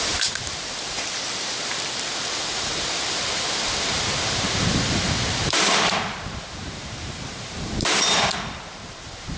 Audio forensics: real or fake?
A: fake